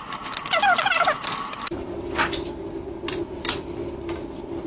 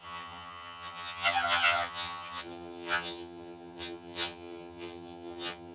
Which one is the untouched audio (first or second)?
first